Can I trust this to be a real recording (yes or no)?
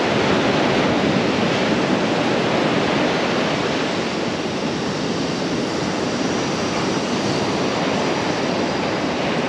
yes